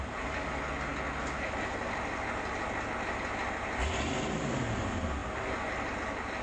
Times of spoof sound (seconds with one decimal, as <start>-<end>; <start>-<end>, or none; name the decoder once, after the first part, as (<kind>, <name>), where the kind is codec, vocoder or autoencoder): none